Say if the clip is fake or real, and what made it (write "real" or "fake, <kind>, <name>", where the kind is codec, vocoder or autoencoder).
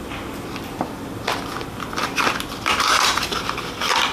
real